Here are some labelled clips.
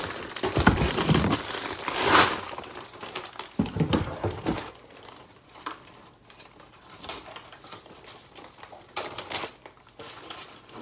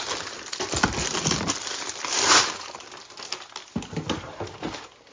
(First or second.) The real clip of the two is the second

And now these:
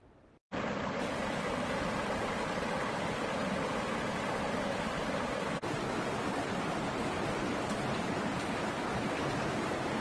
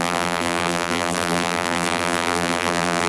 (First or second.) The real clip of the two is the first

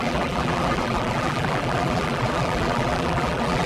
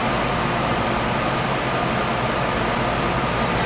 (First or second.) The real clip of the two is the second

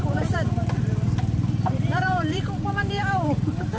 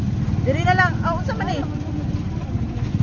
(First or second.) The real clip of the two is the second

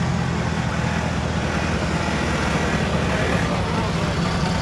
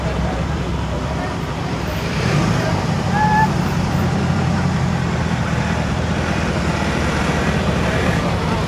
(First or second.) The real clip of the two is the first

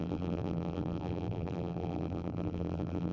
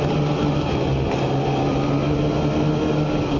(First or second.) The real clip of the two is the second